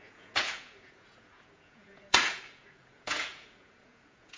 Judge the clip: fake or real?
fake